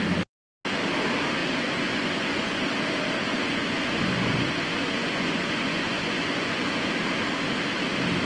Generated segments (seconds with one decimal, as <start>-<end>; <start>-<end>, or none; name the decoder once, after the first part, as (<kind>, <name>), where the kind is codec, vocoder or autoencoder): 1.4-2.6 (vocoder, Vocos); 3.3-6.9